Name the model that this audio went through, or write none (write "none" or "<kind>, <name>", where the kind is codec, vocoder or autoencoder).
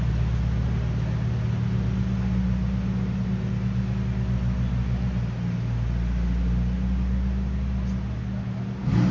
none